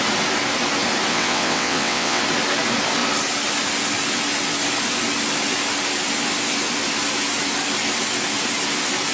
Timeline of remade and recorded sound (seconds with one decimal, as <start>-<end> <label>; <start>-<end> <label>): 0.0-1.1 recorded; 1.1-2.2 remade; 2.2-9.1 recorded